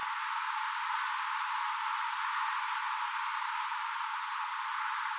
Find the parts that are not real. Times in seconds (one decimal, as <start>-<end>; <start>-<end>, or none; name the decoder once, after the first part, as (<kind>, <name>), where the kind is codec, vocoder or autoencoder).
4.1-4.6 (vocoder, HiFi-GAN)